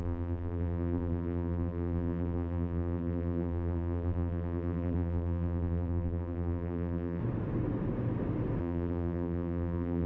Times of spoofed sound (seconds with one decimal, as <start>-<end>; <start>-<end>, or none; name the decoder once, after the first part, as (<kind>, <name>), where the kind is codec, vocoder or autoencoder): 0.0-7.2 (vocoder, BigVGAN v2); 8.6-10.1